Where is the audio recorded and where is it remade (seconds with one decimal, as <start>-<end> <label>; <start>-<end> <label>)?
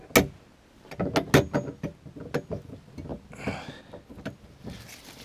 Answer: 0.0-5.2 recorded